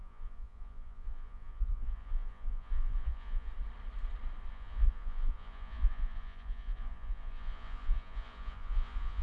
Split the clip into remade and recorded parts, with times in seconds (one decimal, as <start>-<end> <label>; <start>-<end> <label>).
0.0-3.5 remade; 3.5-4.5 recorded; 4.5-9.2 remade